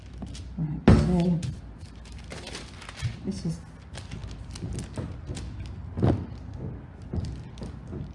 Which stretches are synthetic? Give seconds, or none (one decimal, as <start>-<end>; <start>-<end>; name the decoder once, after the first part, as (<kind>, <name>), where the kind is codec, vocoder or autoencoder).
none